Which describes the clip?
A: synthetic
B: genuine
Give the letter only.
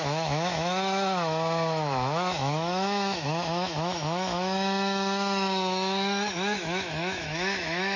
A